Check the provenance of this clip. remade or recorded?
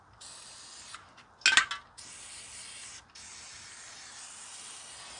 recorded